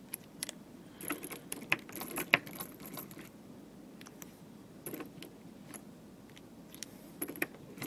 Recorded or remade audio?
remade